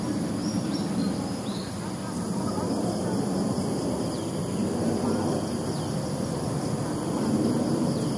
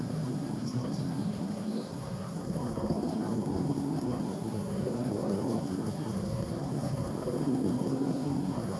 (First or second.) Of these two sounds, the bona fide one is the first